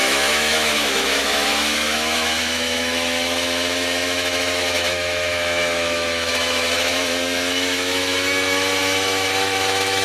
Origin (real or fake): fake